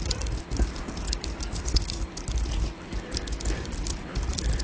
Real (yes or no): yes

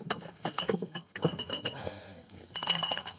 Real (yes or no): no